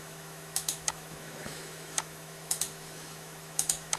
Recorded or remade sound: remade